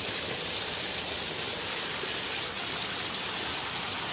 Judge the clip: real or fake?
real